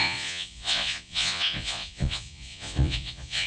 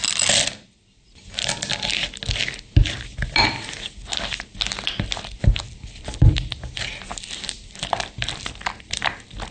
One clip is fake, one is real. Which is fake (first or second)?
first